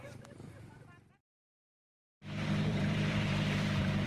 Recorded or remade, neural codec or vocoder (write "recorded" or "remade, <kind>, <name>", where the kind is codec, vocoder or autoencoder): remade, vocoder, BigVGAN v2